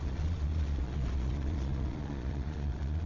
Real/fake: fake